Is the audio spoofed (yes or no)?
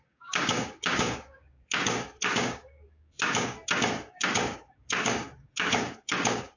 yes